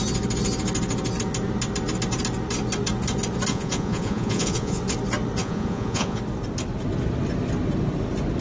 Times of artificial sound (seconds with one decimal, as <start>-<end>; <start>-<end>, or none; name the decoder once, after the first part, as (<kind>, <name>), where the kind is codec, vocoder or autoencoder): 3.5-4.8 (vocoder, Vocos); 5.4-6.2

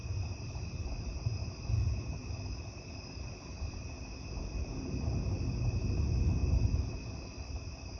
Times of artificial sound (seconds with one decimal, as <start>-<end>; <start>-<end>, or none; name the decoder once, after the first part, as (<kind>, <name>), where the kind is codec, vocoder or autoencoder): none

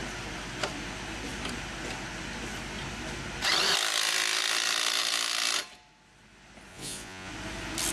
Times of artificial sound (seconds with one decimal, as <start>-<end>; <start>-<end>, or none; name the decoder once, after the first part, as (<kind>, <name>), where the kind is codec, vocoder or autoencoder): 6.7-7.3 (vocoder, Vocos)